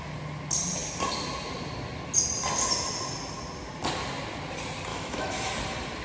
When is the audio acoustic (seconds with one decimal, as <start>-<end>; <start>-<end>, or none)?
0.0-4.9; 5.5-6.0